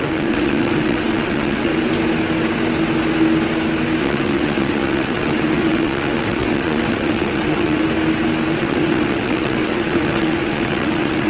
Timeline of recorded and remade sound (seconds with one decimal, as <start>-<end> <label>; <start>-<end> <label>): 0.0-1.7 remade; 1.7-4.0 recorded; 4.0-7.8 remade; 7.8-8.6 recorded; 8.6-11.3 remade